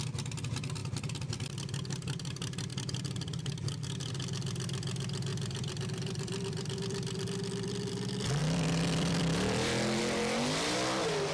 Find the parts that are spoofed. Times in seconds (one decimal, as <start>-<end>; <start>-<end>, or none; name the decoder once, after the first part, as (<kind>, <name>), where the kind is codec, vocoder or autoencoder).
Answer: 0.8-1.5 (vocoder, BigVGAN v2); 2.7-3.7; 5.3-7.9; 8.4-10.0